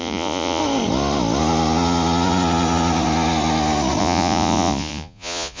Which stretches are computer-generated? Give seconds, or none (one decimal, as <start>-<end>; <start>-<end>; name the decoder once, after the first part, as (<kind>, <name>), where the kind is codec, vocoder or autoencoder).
0.0-0.6 (vocoder, Vocos); 4.0-5.6